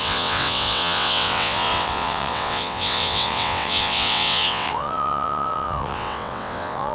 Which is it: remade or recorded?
remade